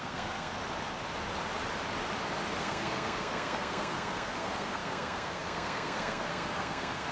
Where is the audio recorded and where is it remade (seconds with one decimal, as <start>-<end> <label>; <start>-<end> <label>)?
0.0-0.5 remade; 0.5-2.6 recorded; 2.6-7.1 remade